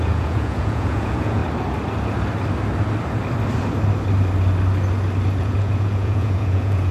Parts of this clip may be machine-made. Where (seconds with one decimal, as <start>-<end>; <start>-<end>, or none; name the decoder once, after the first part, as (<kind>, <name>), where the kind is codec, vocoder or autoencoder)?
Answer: 0.0-1.4 (vocoder, Vocos); 5.4-6.9